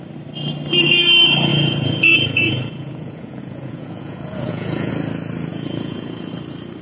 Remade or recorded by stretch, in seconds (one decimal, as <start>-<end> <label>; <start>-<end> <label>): 0.0-1.5 recorded; 1.5-4.9 remade; 4.9-5.5 recorded; 5.5-6.3 remade; 6.3-6.8 recorded